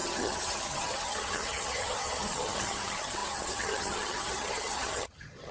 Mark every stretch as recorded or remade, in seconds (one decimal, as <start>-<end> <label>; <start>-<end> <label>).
0.0-5.5 remade